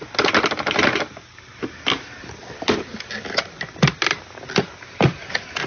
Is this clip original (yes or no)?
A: yes